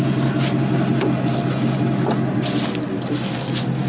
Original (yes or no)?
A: yes